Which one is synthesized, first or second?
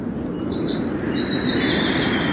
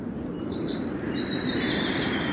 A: second